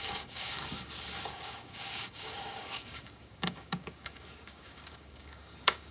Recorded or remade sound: remade